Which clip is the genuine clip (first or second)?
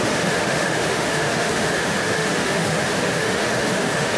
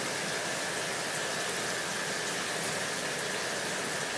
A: second